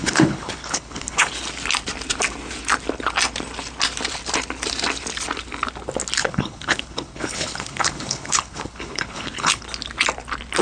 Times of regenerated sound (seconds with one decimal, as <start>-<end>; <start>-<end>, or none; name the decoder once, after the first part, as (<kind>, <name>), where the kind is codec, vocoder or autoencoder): 0.0-1.3 (codec, HILCodec); 6.2-9.6